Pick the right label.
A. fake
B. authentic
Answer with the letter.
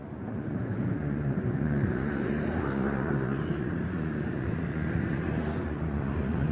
A